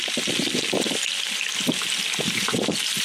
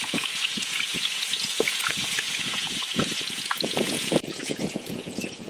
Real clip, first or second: first